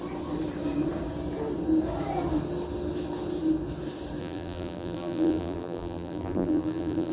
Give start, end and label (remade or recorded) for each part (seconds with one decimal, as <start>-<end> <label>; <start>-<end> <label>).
0.0-4.2 recorded; 4.2-7.1 remade